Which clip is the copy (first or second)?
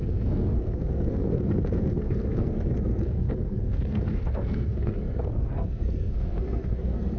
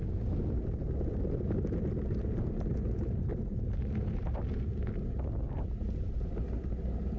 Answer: first